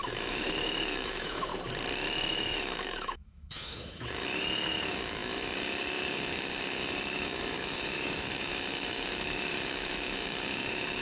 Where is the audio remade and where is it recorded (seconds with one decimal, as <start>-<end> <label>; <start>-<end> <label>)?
0.0-1.5 remade; 1.5-2.3 recorded; 2.3-11.0 remade